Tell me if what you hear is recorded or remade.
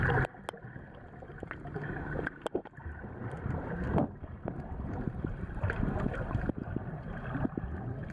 recorded